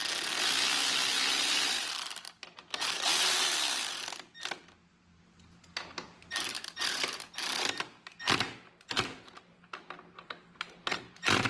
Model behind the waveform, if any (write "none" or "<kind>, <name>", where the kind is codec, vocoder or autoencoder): none